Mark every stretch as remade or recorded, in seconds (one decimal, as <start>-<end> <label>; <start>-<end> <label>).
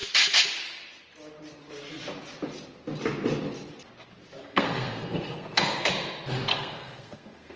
0.0-4.4 recorded; 4.4-5.9 remade; 5.9-6.5 recorded; 6.5-7.6 remade